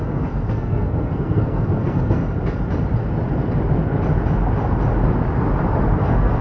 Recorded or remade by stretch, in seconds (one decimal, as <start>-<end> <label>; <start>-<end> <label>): 0.0-2.2 remade; 2.2-6.0 recorded; 6.0-6.4 remade